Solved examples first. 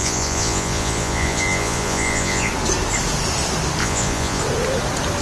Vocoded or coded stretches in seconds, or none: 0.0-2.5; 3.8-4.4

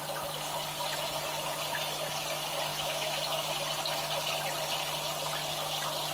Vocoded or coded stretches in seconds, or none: 2.7-3.5

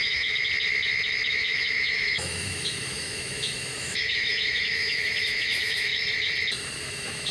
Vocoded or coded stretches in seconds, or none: 0.0-0.4; 1.3-5.9; 6.8-7.3